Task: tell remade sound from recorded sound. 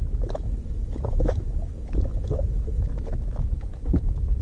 remade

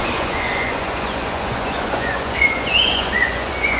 remade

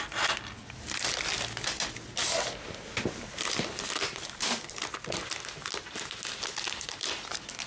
recorded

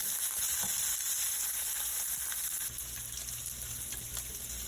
recorded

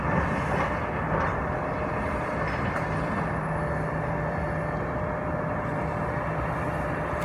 recorded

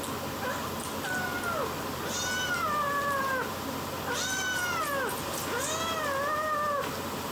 recorded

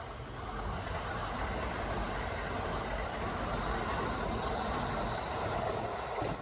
recorded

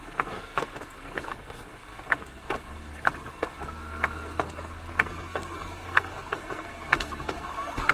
remade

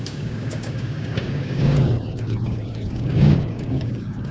remade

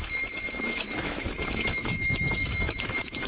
remade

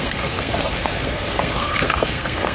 remade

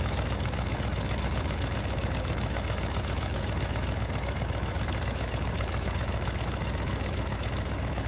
remade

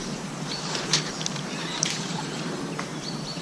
remade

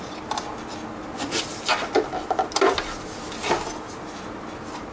recorded